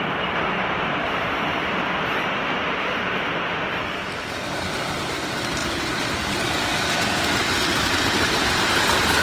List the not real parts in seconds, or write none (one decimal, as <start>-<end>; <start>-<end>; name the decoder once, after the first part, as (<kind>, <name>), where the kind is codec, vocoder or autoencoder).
0.0-9.2 (vocoder, BigVGAN v2)